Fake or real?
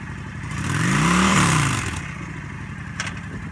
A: fake